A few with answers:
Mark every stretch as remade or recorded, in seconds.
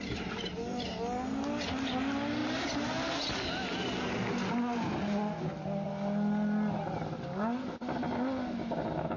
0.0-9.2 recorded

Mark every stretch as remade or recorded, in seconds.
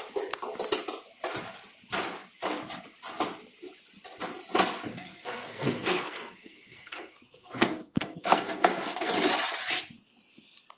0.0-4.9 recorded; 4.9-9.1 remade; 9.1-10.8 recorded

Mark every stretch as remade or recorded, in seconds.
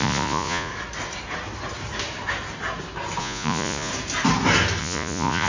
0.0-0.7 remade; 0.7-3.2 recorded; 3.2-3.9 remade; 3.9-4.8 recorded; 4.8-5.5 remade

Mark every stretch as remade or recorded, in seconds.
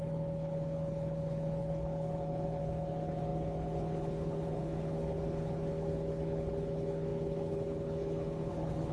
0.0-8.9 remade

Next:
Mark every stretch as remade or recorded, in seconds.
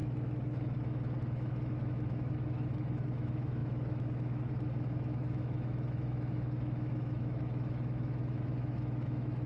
0.0-9.5 remade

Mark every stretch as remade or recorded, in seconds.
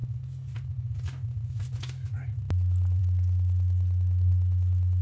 0.0-5.0 recorded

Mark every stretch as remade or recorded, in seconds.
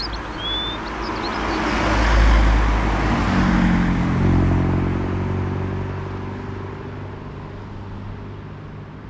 0.0-9.1 recorded